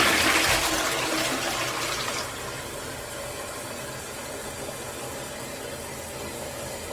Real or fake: real